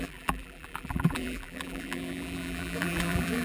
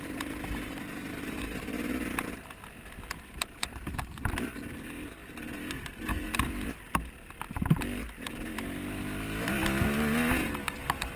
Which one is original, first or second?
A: second